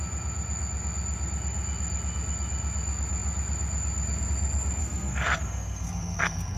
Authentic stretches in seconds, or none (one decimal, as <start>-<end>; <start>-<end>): 0.0-4.8